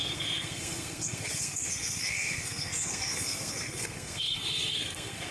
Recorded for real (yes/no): no